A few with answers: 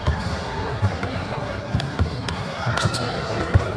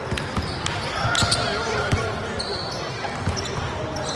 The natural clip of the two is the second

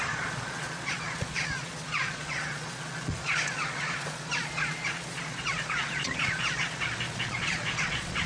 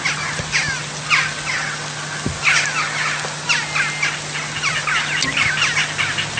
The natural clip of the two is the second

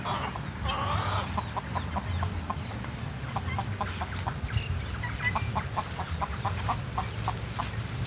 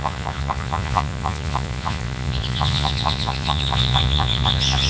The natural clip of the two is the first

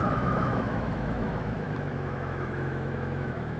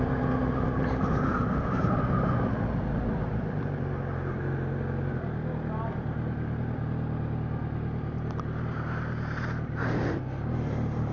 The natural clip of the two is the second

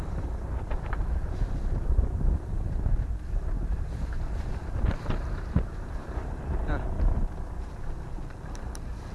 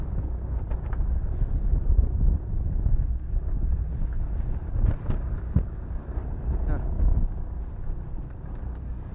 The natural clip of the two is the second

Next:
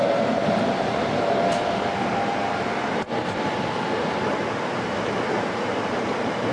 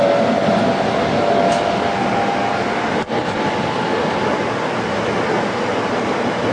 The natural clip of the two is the second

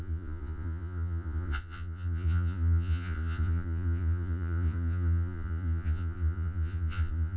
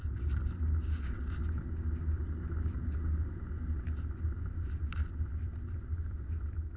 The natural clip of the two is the second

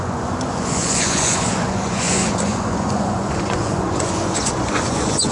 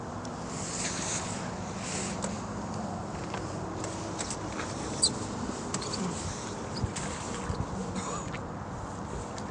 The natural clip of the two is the second